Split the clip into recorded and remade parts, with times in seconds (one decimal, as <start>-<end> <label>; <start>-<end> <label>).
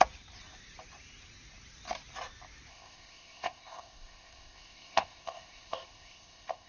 0.0-2.7 recorded; 2.7-6.7 remade